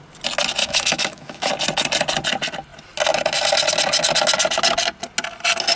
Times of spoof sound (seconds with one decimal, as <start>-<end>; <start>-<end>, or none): 0.6-1.5